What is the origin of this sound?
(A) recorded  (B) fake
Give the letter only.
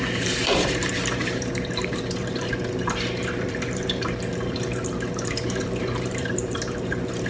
B